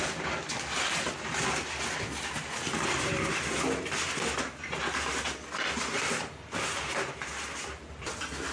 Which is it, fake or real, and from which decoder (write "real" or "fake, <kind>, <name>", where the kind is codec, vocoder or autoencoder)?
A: real